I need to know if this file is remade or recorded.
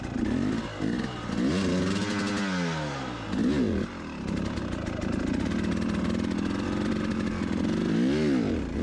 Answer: recorded